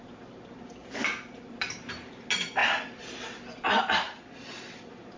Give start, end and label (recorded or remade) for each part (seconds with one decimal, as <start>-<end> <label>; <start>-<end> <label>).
0.0-0.8 recorded; 0.8-2.1 remade; 2.1-5.2 recorded